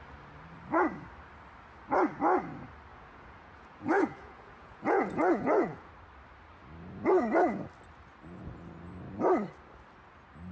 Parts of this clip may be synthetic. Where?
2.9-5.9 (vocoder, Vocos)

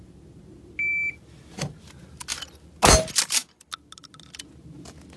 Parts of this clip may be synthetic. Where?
none

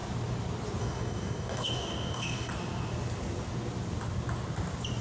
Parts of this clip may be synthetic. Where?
0.8-2.5 (codec, DAC)

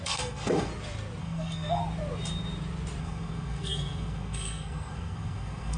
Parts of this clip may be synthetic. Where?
0.0-0.7 (codec, SNAC); 1.2-1.8; 3.0-5.8